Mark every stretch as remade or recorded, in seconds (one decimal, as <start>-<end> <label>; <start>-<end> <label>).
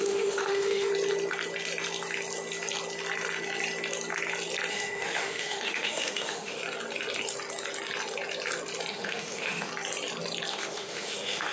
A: 0.0-0.9 remade; 0.9-4.7 recorded; 4.7-6.6 remade; 6.6-8.9 recorded; 8.9-9.7 remade; 9.7-10.5 recorded; 10.5-11.5 remade